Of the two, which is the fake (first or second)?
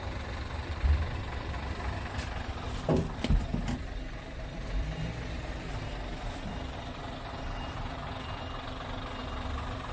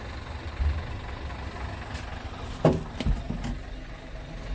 first